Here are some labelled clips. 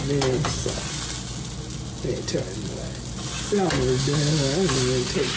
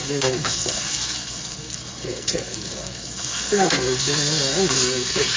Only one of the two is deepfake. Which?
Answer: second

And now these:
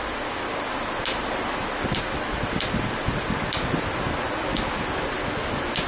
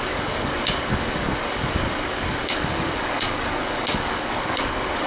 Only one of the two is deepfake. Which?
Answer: second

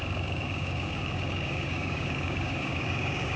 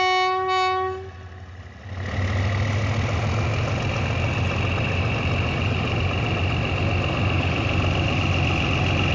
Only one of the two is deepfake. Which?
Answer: first